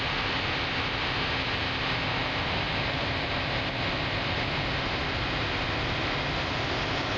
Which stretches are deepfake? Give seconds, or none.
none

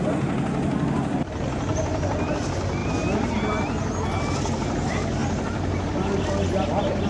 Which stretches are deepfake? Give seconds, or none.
1.7-2.3; 2.8-3.3; 5.2-6.1

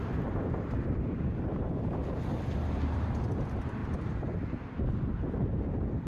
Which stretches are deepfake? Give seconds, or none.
0.0-2.0; 2.6-6.1

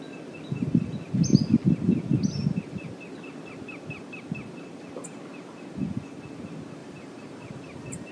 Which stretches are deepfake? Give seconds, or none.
6.8-8.1

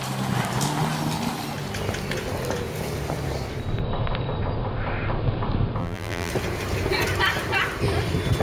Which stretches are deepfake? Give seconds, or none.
5.8-6.3

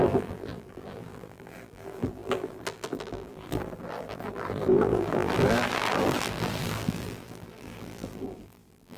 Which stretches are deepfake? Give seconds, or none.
0.0-9.0

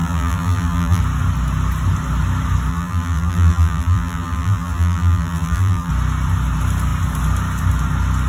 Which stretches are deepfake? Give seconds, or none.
0.0-1.0; 2.7-5.9

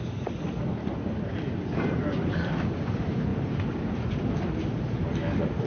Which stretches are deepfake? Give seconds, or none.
0.0-5.7